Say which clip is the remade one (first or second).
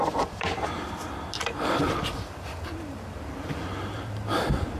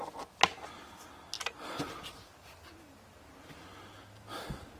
first